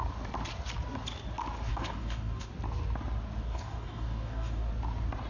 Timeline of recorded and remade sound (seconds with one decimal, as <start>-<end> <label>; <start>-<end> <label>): 0.0-1.7 recorded; 1.7-2.5 remade; 2.5-3.4 recorded; 3.4-4.7 remade; 4.7-5.3 recorded